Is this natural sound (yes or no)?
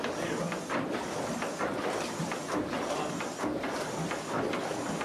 yes